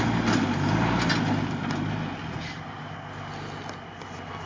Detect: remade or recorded recorded